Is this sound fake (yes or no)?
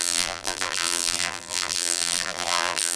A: yes